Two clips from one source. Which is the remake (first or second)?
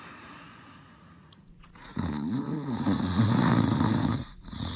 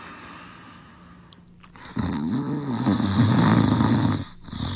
first